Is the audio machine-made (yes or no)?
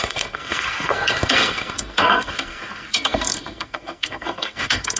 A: yes